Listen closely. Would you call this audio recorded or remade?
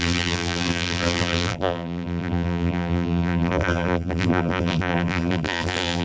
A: remade